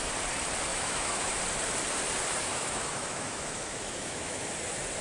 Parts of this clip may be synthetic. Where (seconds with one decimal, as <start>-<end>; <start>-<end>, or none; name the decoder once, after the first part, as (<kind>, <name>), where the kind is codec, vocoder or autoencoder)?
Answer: 0.7-1.4 (autoencoder, DAC-VAE); 2.5-4.5

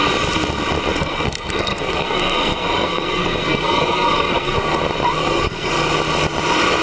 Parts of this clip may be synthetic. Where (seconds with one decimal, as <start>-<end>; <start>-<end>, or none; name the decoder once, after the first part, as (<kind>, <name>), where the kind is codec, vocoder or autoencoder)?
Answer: 0.9-4.8 (codec, SNAC); 5.2-5.9

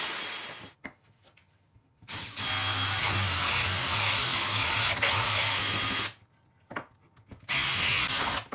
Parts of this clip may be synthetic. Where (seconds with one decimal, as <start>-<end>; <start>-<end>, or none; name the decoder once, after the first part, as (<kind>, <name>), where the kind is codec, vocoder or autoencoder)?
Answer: 1.4-2.2 (vocoder, BigVGAN v2)

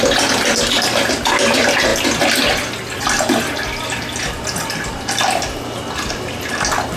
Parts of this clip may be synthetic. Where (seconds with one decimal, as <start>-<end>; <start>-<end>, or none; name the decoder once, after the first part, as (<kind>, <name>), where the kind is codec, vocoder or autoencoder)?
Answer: none

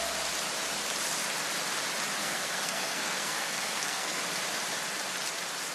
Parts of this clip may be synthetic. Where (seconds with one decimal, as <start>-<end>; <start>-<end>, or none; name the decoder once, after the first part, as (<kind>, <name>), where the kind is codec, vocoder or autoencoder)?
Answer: 2.2-4.2 (codec, SNAC)

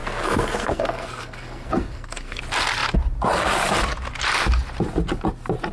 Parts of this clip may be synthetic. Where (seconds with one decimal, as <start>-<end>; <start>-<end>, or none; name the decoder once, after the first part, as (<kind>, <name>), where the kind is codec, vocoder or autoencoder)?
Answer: 0.0-2.4 (codec, SNAC)